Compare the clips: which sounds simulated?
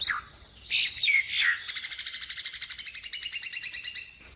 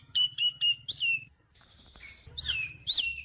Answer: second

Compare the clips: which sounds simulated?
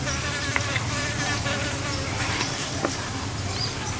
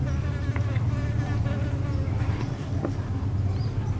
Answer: first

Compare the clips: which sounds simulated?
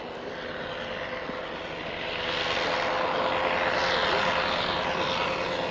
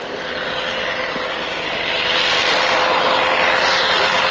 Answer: second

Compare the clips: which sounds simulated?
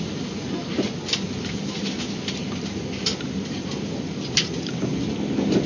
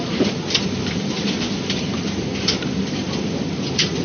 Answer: second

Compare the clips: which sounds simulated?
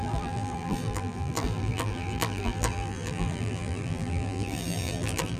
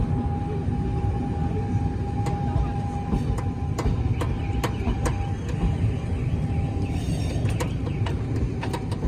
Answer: first